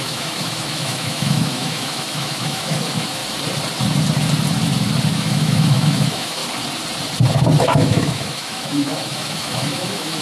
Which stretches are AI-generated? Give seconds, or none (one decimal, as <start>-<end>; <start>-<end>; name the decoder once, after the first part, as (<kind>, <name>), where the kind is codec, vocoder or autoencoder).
0.0-3.2 (autoencoder, DAC-VAE); 5.1-6.4; 7.6-10.2